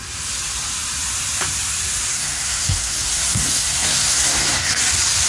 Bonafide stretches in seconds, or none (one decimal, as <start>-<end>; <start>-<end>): 0.0-2.1; 4.7-5.3